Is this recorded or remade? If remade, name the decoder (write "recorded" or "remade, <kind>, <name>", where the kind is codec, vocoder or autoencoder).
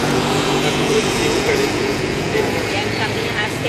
remade, vocoder, Vocos